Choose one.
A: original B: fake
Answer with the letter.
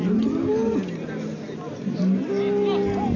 A